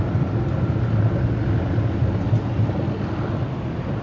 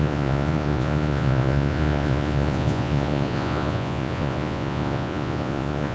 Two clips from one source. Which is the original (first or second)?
first